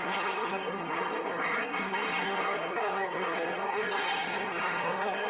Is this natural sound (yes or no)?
no